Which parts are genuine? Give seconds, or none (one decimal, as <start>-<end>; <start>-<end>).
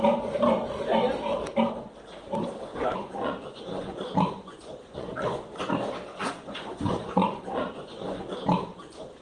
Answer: 0.0-2.7; 5.6-6.1; 8.2-9.2